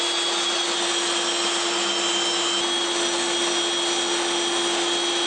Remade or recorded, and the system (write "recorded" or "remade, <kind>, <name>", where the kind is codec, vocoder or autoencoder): recorded